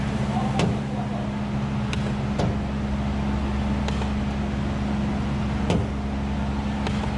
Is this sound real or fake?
real